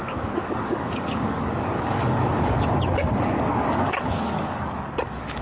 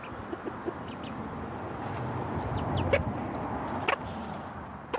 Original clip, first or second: second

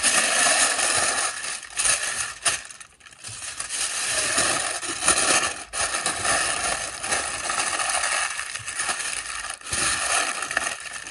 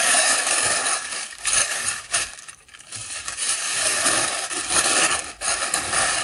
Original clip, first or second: first